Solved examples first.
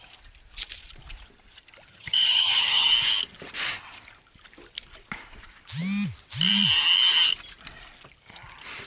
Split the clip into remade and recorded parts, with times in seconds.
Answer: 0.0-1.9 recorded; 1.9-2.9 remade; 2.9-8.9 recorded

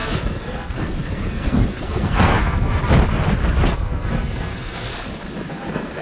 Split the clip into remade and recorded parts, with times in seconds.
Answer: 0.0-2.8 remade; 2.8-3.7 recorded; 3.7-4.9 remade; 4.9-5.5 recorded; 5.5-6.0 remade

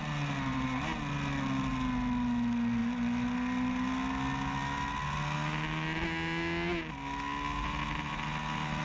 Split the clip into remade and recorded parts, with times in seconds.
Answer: 0.0-8.8 recorded